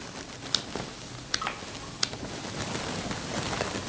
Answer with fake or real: real